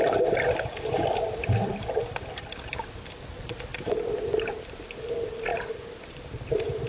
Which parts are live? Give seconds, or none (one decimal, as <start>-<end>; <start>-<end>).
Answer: 0.0-1.4; 2.3-3.7; 4.5-6.9